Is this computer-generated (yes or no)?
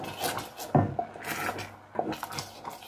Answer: no